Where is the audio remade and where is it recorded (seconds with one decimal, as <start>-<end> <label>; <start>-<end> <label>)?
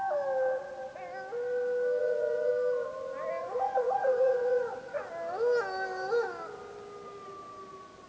0.0-2.0 recorded; 2.0-2.5 remade; 2.5-3.4 recorded; 3.4-5.1 remade; 5.1-8.1 recorded